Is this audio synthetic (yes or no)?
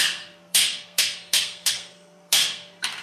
yes